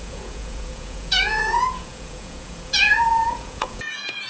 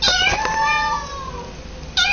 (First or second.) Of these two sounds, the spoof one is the first